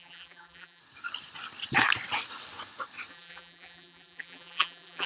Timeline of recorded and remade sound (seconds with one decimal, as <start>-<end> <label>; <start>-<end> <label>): 0.0-0.8 remade; 0.8-3.1 recorded; 3.1-5.1 remade